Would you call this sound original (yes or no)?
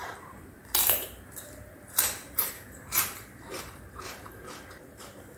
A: no